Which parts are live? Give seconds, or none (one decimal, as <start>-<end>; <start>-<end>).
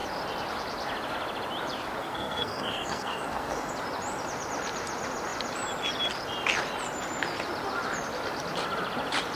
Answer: 0.0-2.0; 3.7-9.4